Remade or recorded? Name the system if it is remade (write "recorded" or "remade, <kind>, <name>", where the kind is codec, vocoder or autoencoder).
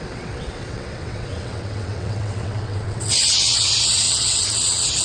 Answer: remade, vocoder, WaveNeXt